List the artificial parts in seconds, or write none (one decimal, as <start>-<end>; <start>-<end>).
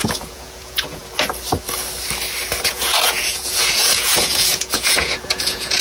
0.0-1.0; 2.7-5.8